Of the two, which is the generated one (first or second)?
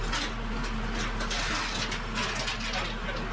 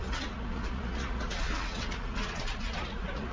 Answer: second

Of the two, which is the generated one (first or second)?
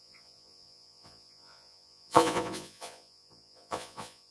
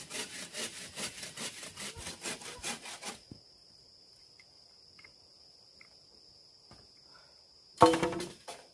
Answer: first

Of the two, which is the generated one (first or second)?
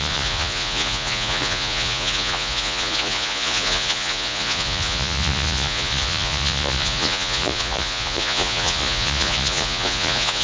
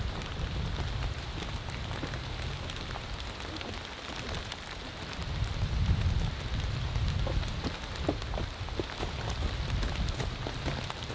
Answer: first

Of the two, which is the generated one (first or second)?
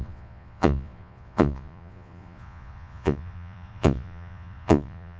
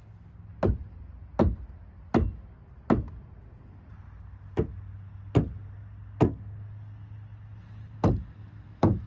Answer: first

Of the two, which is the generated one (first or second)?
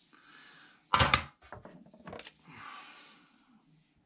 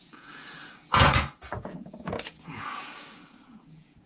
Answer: second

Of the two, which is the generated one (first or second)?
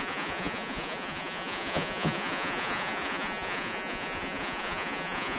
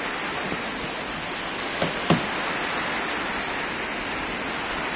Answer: first